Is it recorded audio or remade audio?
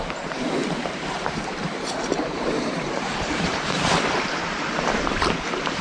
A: remade